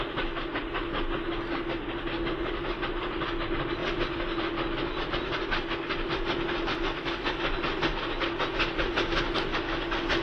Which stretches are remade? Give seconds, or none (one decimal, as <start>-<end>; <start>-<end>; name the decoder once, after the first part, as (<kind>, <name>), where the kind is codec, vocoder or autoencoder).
3.8-5.1 (vocoder, BigVGAN v2)